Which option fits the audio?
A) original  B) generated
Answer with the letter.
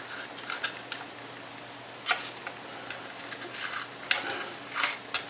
A